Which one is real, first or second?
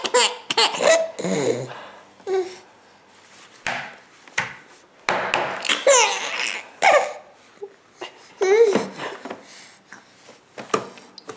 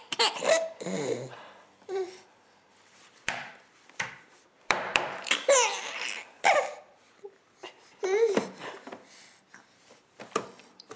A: first